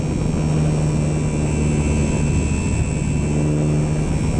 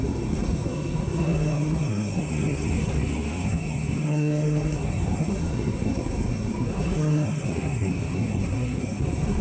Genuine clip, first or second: first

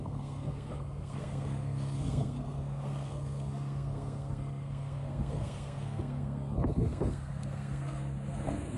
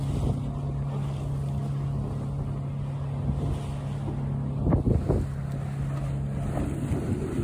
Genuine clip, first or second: second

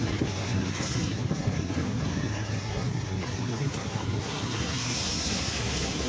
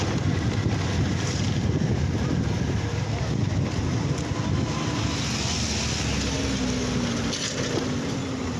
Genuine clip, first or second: second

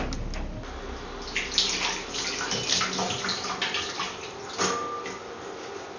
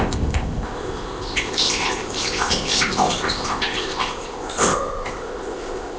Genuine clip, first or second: first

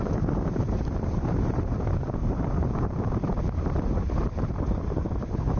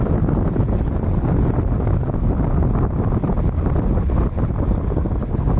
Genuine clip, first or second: second